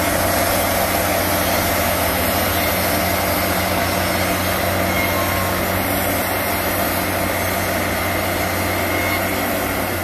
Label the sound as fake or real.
real